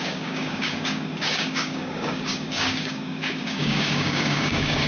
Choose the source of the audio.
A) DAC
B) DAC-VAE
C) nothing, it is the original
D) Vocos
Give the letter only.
A